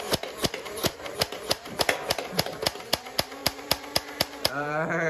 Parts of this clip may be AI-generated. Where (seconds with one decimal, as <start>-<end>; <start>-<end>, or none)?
0.0-5.1

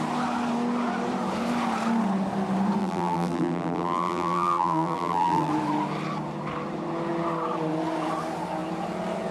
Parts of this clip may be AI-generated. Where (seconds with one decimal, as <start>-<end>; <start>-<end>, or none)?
2.8-5.5

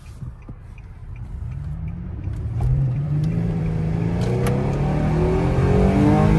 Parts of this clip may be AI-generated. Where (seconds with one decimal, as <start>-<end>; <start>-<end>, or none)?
1.0-3.6

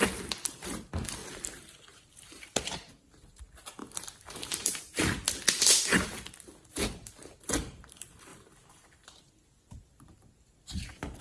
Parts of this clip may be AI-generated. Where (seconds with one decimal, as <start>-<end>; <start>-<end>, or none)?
1.2-3.4; 3.8-5.0; 8.3-11.2

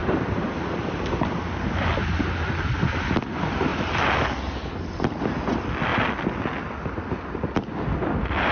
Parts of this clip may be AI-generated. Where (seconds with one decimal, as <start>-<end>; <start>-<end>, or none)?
none

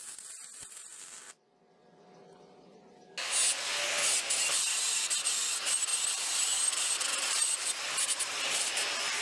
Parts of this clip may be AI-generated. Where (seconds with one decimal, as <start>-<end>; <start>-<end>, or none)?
0.0-1.5; 4.4-9.2

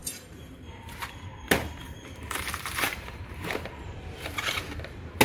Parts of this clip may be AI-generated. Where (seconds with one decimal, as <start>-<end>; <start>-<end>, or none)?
0.0-0.6; 1.8-5.2

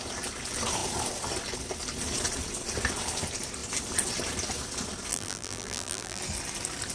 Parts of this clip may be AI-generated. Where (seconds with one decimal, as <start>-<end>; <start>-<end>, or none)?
5.1-6.2